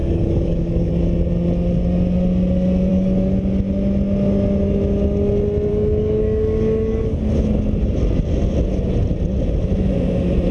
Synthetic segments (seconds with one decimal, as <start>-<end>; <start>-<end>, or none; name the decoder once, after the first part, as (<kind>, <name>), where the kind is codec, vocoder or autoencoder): 0.0-0.9 (codec, DAC); 2.9-3.4; 5.7-7.2